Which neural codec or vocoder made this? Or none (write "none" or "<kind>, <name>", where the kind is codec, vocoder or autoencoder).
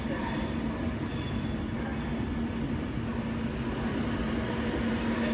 none